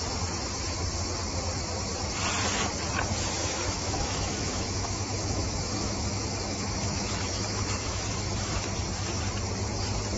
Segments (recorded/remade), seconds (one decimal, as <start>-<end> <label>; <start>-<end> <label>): 0.0-3.4 recorded; 3.4-8.7 remade; 8.7-10.2 recorded